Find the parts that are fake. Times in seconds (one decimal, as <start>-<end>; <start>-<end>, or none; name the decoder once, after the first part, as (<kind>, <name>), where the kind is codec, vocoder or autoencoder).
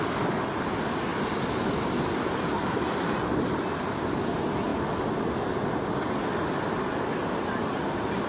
1.1-2.0 (vocoder, BigVGAN v2)